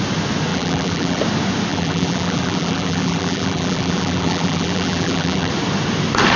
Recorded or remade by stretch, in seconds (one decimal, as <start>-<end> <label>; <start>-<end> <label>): 0.0-0.5 recorded; 0.5-1.2 remade; 1.2-1.7 recorded; 1.7-5.5 remade; 5.5-6.4 recorded